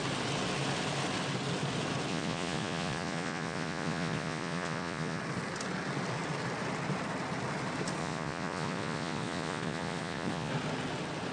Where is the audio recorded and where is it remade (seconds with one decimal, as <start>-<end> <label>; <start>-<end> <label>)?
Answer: 0.0-2.1 recorded; 2.1-5.2 remade; 5.2-8.0 recorded; 8.0-10.5 remade; 10.5-11.3 recorded

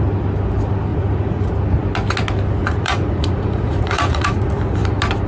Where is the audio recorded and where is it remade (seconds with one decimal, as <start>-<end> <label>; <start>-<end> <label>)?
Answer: 0.0-0.9 recorded; 0.9-1.5 remade; 1.5-2.6 recorded; 2.6-4.5 remade; 4.5-5.3 recorded

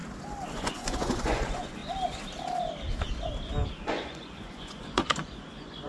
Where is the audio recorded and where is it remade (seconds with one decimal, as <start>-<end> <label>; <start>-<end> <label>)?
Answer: 0.0-0.5 recorded; 0.5-1.8 remade; 1.8-3.9 recorded; 3.9-5.9 remade

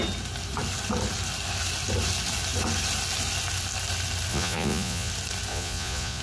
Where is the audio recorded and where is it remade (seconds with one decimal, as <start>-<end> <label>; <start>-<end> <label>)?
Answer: 0.0-4.3 recorded; 4.3-5.1 remade; 5.1-5.5 recorded; 5.5-6.2 remade

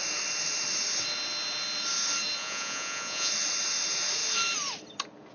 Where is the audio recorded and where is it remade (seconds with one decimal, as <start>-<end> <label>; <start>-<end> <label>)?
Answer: 0.0-2.4 recorded; 2.4-3.3 remade; 3.3-5.3 recorded

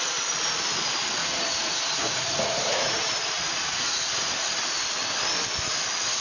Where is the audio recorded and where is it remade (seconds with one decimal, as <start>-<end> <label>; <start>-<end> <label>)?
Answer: 0.0-1.2 recorded; 1.2-4.9 remade; 4.9-6.2 recorded